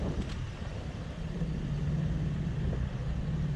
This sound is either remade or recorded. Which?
recorded